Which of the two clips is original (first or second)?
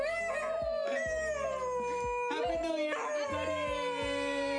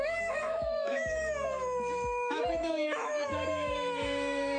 first